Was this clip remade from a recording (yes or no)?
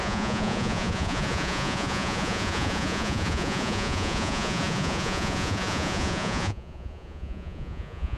yes